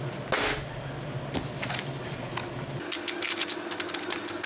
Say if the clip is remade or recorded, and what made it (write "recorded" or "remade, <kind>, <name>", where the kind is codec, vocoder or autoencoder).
recorded